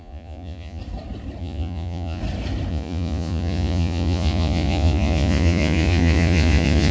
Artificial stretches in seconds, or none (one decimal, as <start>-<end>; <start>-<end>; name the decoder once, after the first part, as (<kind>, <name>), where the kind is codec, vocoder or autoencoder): 0.0-0.8 (vocoder, Vocos); 1.4-2.2; 2.7-6.9